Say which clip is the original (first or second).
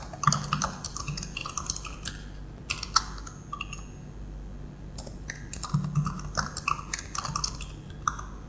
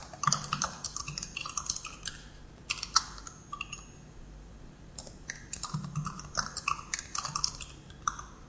first